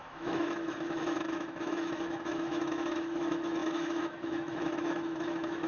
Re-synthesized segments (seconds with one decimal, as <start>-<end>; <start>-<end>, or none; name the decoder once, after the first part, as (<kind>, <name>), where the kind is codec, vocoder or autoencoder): 0.0-5.7 (autoencoder, DAC-VAE)